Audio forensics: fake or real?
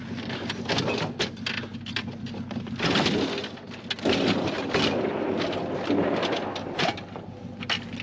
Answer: real